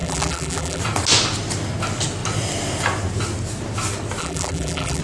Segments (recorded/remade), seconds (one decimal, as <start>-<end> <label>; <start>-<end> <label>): 0.0-0.8 remade; 0.8-4.2 recorded; 4.2-5.0 remade